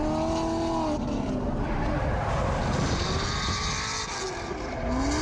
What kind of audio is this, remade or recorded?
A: recorded